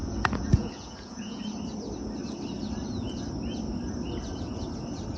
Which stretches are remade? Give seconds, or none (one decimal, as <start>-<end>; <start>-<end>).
0.0-1.4